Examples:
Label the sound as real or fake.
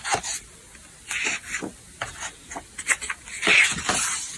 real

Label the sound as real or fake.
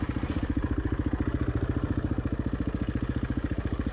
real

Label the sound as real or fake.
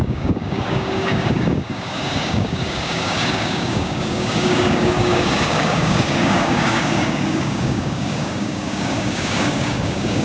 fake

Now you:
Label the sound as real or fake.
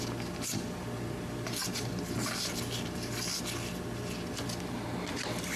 real